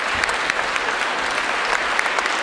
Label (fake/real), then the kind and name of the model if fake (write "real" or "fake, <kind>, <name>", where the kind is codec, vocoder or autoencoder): real